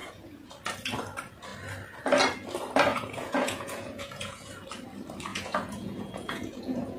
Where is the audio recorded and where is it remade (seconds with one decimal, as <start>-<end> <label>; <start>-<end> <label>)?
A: 0.0-0.5 remade; 0.5-2.9 recorded; 2.9-4.5 remade; 4.5-5.3 recorded; 5.3-7.0 remade